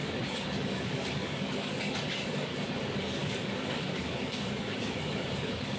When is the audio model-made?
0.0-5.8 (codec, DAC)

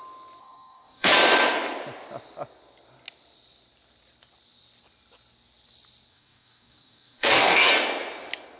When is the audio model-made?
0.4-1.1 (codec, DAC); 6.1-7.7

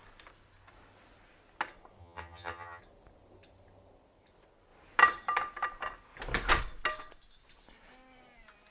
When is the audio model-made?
2.0-2.8 (vocoder, HiFi-GAN)

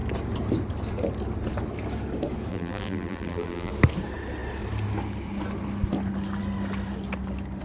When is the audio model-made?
2.5-3.7 (vocoder, BigVGAN v2)

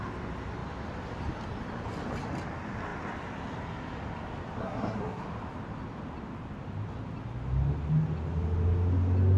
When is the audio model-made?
4.6-5.2 (codec, SNAC)